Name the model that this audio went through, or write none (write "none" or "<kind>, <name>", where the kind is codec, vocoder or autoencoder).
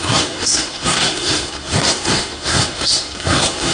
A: codec, SNAC